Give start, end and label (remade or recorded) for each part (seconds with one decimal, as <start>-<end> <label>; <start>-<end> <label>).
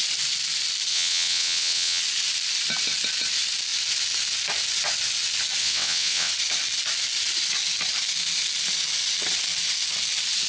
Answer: 0.0-0.9 recorded; 0.9-2.0 remade; 2.0-5.6 recorded; 5.6-6.3 remade; 6.3-10.5 recorded